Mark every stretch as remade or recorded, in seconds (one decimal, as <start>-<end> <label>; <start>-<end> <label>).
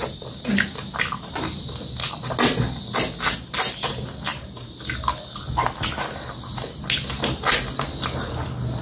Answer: 0.0-4.3 recorded; 4.3-4.8 remade; 4.8-8.8 recorded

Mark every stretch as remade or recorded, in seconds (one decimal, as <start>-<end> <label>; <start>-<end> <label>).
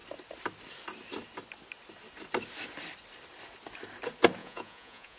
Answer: 0.0-4.4 recorded; 4.4-5.2 remade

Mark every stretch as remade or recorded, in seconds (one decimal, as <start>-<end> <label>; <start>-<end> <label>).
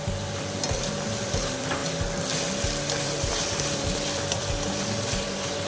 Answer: 0.0-1.8 remade; 1.8-3.0 recorded; 3.0-5.7 remade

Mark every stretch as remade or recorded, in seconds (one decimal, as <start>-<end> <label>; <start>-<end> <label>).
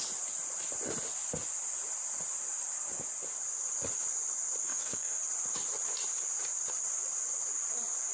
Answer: 0.0-4.6 recorded; 4.6-5.2 remade; 5.2-8.1 recorded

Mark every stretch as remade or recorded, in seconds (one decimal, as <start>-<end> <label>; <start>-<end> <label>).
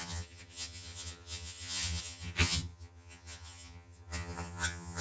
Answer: 0.0-5.0 remade